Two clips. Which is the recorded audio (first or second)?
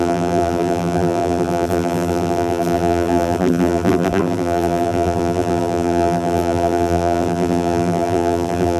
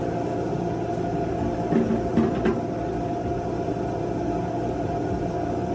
second